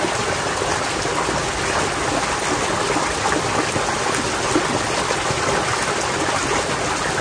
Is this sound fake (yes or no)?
no